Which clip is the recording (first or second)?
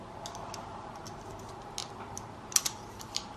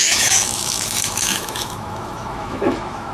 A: first